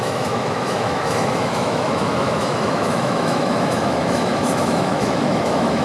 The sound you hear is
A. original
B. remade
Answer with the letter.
B